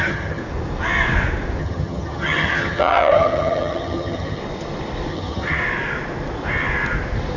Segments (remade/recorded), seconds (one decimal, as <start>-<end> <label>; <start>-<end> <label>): 0.0-0.4 remade; 0.4-1.6 recorded; 1.6-4.4 remade; 4.4-5.1 recorded; 5.1-5.6 remade; 5.6-7.4 recorded